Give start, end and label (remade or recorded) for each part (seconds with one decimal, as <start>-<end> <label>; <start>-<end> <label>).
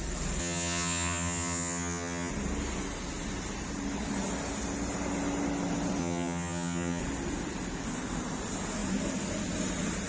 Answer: 0.0-0.4 recorded; 0.4-2.3 remade; 2.3-6.0 recorded; 6.0-7.0 remade; 7.0-10.1 recorded